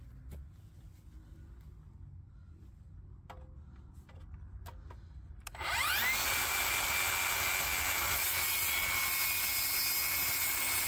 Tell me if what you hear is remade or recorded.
recorded